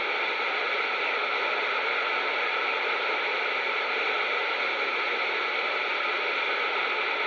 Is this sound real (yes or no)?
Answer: yes